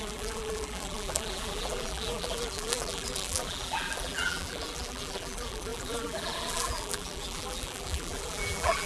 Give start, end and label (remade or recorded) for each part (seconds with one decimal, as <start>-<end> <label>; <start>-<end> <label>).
0.0-8.9 remade